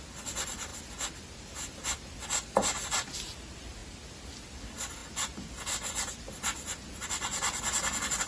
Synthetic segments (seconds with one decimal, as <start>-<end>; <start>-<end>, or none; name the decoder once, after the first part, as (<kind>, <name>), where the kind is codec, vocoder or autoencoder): none